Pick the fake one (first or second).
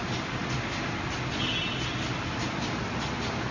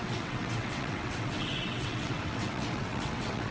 second